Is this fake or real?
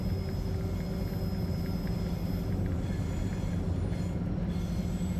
real